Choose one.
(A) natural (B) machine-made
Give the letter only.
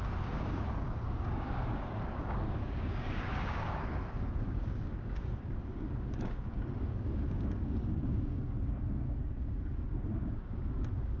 B